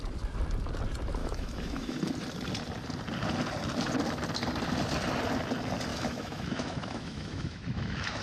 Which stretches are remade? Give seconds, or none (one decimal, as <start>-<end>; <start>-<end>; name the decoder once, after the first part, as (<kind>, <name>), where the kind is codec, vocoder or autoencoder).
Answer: 1.2-2.0 (autoencoder, DAC-VAE); 5.9-8.2